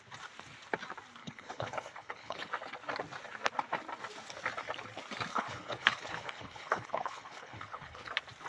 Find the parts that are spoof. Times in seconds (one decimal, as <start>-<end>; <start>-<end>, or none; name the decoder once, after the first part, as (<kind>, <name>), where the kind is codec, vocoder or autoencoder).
1.2-2.5 (codec, HILCodec); 5.3-8.1